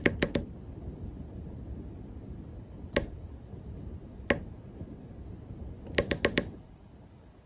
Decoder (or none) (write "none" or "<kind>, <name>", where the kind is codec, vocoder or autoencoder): vocoder, BigVGAN v2